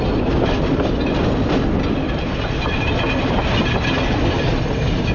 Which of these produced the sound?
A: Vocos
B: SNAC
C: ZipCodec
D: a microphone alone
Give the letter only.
D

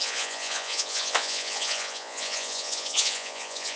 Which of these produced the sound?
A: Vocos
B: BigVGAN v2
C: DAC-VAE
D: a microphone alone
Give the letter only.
A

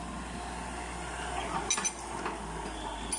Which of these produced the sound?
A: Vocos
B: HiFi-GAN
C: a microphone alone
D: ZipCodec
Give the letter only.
C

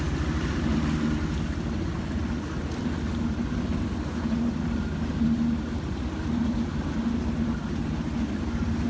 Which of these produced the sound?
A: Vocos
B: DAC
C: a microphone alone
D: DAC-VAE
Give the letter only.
C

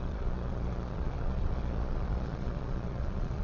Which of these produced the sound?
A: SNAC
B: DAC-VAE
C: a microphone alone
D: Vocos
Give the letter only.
D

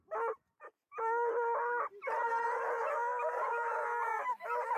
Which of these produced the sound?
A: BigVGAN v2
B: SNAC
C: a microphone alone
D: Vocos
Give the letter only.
C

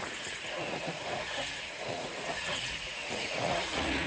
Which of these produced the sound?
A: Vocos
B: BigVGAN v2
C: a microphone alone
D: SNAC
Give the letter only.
A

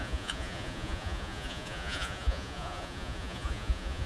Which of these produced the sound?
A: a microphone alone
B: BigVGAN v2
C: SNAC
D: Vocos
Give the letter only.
D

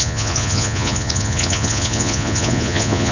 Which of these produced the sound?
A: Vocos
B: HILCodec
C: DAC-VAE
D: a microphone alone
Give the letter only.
A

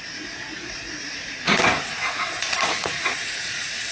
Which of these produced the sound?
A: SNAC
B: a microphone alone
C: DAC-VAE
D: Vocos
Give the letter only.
D